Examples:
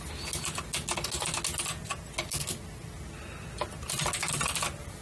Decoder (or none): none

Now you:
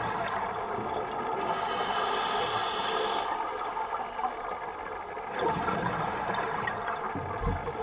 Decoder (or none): none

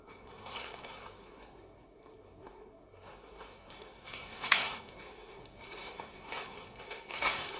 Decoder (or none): codec, SNAC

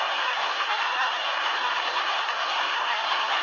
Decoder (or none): codec, SNAC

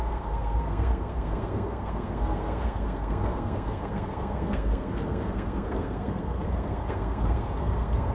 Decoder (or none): codec, SNAC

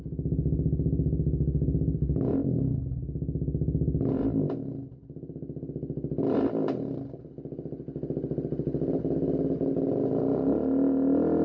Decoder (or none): none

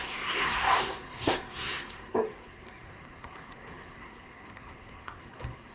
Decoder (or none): codec, SNAC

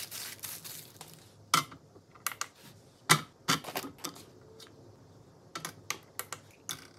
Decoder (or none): none